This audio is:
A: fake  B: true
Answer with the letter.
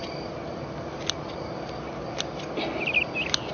B